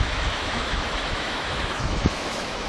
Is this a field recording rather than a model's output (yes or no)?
no